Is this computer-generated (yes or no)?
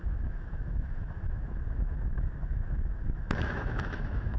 yes